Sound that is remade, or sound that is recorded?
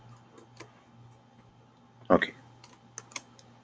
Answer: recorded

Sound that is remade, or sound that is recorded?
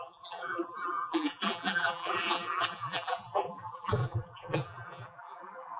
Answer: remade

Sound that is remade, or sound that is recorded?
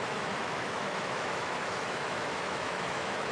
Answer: remade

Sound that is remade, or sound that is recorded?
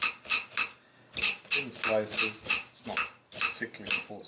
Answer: recorded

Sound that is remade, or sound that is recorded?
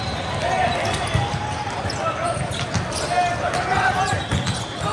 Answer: recorded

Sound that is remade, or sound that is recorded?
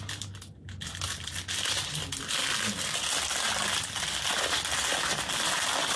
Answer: recorded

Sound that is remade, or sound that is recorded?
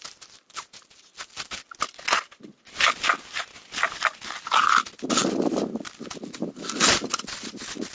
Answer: recorded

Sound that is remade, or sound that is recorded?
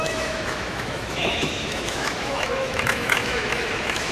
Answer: remade